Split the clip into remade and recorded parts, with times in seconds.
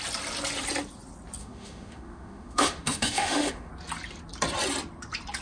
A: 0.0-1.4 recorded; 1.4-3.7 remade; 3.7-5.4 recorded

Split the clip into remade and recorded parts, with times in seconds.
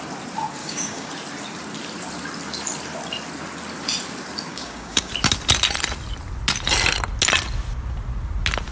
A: 0.0-0.6 recorded; 0.6-1.1 remade; 1.1-4.5 recorded; 4.5-5.1 remade; 5.1-8.7 recorded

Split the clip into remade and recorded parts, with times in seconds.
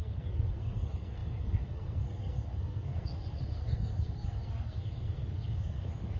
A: 0.0-6.2 remade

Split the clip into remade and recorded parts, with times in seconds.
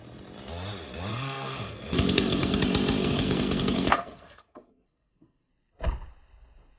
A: 0.0-1.1 recorded; 1.1-2.6 remade; 2.6-3.0 recorded; 3.0-5.5 remade; 5.5-6.8 recorded